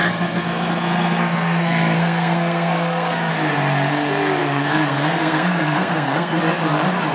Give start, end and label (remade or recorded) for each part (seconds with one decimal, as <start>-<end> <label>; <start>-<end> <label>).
0.0-3.3 remade; 3.3-4.4 recorded; 4.4-6.4 remade; 6.4-7.1 recorded

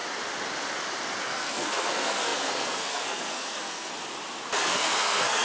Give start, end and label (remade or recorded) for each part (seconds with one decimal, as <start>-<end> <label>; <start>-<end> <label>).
0.0-1.2 recorded; 1.2-3.9 remade; 3.9-4.6 recorded; 4.6-5.4 remade

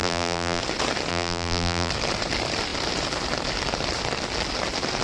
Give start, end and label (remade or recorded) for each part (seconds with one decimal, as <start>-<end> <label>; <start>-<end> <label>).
0.0-0.6 remade; 0.6-1.1 recorded; 1.1-1.9 remade; 1.9-5.0 recorded

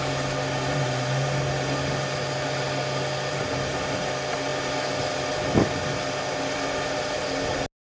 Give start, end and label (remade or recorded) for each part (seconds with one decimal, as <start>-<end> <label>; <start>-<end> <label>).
0.0-7.8 recorded